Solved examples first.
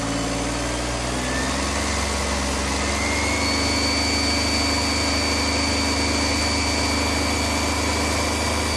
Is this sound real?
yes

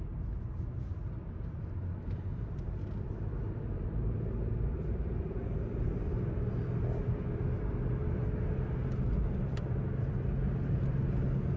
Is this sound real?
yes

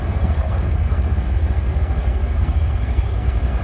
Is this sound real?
no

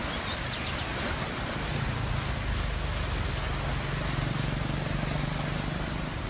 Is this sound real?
yes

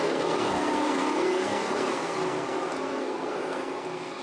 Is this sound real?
no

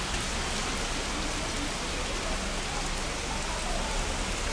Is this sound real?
yes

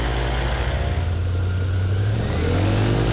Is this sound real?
yes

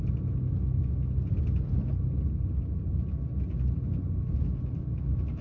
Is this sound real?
yes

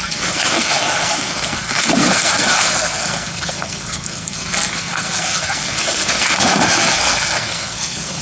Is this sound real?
no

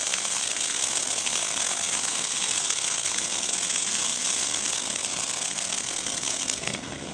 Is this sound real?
no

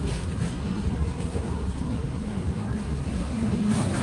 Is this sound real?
no